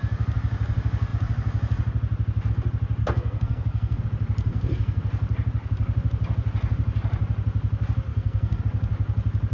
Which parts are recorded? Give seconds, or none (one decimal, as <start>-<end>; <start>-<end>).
0.0-3.0; 4.0-4.5; 5.0-8.1; 8.6-9.5